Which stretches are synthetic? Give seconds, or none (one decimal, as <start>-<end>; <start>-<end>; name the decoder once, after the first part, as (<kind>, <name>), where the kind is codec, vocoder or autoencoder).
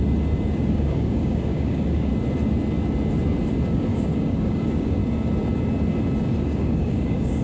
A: 0.7-2.1 (codec, DAC); 3.7-5.0; 6.4-7.4